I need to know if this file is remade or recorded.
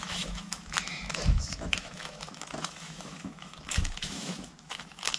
remade